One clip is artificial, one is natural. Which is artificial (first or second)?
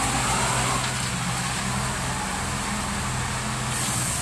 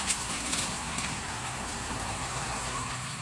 second